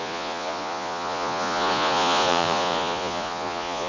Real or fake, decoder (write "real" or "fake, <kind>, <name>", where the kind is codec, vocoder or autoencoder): fake, vocoder, Vocos